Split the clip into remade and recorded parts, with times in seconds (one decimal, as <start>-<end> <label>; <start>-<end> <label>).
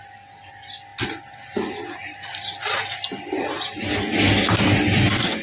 0.0-5.4 recorded